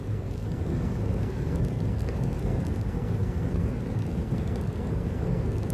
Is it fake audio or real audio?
fake